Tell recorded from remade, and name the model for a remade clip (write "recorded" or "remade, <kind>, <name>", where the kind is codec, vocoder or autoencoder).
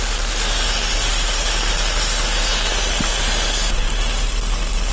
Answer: recorded